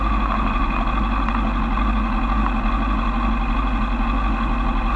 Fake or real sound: real